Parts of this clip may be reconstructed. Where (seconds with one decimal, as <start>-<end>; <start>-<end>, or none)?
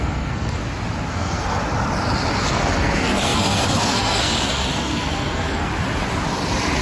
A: 0.0-0.6; 1.1-1.6; 2.5-5.7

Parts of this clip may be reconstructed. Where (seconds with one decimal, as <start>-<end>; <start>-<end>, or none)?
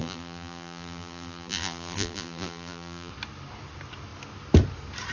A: 0.0-3.1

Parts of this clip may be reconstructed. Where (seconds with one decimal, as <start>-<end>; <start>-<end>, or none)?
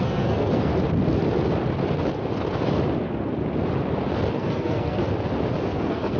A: 0.0-0.7; 4.4-5.0; 5.6-6.2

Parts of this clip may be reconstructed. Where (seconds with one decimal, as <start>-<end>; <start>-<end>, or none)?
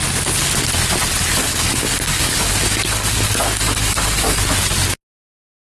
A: 1.4-4.4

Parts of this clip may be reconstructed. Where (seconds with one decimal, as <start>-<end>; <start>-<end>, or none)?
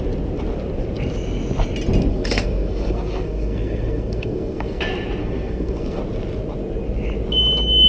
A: 2.1-4.8; 5.2-6.0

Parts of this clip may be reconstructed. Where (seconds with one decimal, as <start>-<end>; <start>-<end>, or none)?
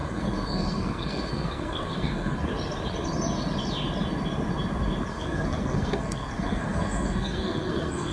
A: 0.0-2.5; 5.1-8.1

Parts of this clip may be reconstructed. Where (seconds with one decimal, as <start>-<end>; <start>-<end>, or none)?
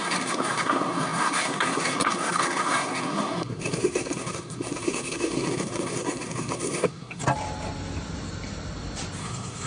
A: 0.0-7.2; 9.2-9.7